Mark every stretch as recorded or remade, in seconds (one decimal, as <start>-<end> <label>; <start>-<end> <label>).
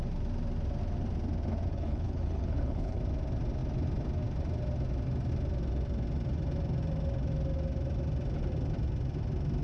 0.0-1.7 recorded; 1.7-3.0 remade; 3.0-9.6 recorded